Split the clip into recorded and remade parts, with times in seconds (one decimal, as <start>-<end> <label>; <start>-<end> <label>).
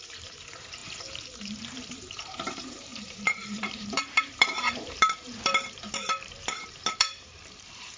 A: 0.0-8.0 remade